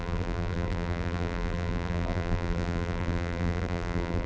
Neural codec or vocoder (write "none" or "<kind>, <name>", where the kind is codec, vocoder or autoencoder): vocoder, BigVGAN v2